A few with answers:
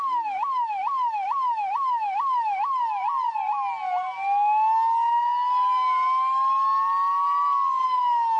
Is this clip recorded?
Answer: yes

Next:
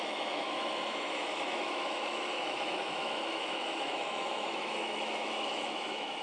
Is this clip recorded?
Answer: no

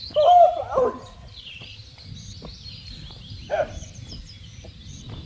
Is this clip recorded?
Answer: no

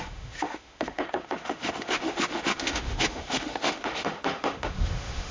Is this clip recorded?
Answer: no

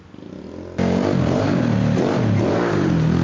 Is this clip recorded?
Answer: yes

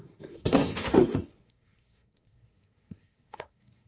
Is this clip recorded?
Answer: no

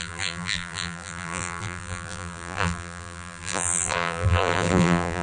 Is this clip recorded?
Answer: no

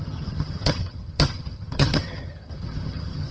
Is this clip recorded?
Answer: no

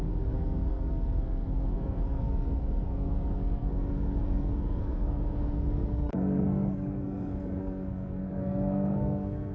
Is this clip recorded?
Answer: no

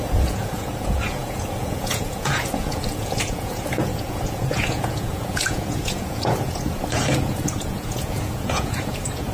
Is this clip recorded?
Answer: no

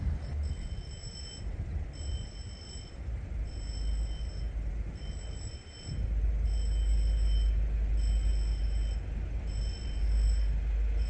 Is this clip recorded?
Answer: yes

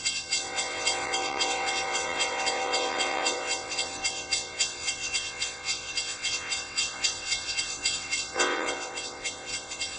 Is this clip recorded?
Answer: no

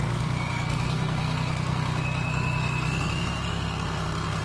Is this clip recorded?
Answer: no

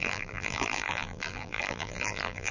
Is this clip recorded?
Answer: no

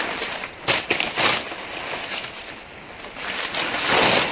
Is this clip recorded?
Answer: yes